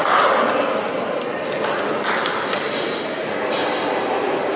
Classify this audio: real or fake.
real